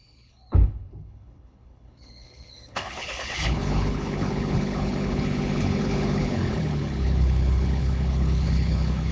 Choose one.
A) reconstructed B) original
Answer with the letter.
A